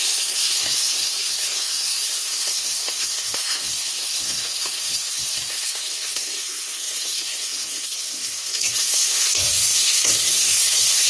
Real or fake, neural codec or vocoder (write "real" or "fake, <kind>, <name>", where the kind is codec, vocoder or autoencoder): fake, codec, SNAC